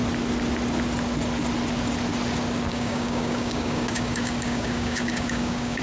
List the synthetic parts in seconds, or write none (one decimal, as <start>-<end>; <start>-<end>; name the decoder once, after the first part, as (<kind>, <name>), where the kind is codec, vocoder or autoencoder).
2.7-5.8 (codec, DAC)